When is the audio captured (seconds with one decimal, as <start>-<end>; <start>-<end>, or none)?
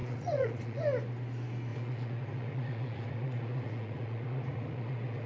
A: 0.8-1.7